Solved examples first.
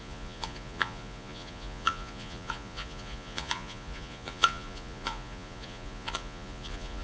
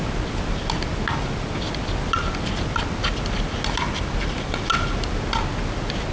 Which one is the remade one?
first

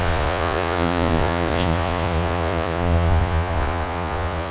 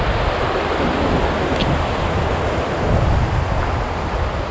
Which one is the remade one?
first